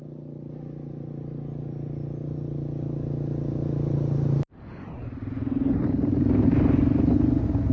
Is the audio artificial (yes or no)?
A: no